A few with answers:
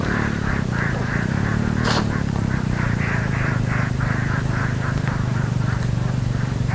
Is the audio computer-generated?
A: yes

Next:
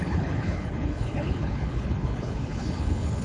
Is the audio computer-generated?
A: yes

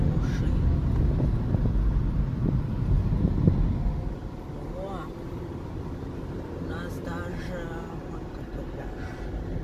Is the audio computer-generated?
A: no